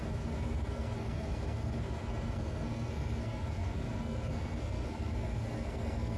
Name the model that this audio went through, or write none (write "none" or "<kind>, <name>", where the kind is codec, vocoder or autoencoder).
codec, SNAC